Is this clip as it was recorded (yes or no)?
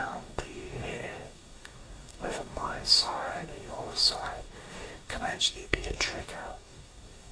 no